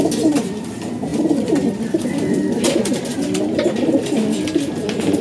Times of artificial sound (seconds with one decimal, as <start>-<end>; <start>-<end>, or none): 1.1-4.2